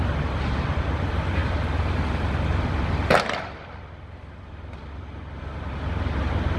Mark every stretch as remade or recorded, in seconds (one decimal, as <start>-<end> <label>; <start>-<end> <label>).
0.0-6.6 recorded